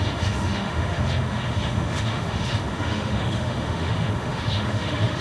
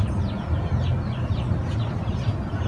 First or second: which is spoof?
first